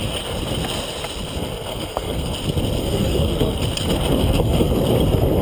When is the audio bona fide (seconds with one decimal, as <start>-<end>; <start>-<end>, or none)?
0.0-1.7; 2.3-2.8; 3.5-4.2; 4.8-5.4